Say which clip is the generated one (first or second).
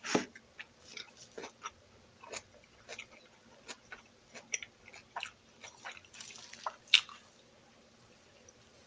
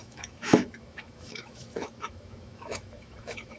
second